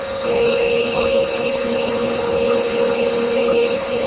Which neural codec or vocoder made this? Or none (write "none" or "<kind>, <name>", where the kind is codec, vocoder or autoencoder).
codec, HILCodec